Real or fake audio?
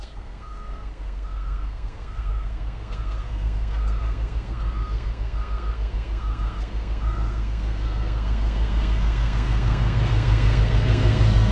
fake